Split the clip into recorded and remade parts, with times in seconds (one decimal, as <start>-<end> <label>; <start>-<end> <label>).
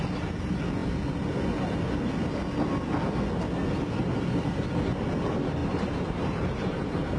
0.0-5.6 recorded; 5.6-7.2 remade